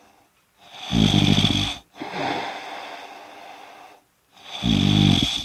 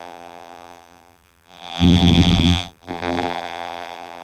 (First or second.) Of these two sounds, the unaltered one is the first